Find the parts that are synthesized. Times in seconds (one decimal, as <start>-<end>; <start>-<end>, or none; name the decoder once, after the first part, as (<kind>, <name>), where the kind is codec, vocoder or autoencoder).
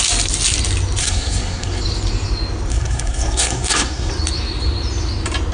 1.0-1.8 (codec, SNAC); 2.7-4.1